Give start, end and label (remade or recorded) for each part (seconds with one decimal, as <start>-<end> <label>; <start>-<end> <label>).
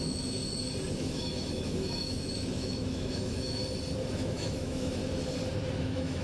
0.0-0.4 remade; 0.4-0.9 recorded; 0.9-3.6 remade; 3.6-4.1 recorded; 4.1-5.0 remade; 5.0-5.8 recorded; 5.8-6.2 remade